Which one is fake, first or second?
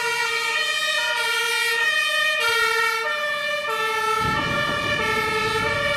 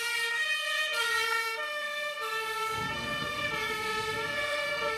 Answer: second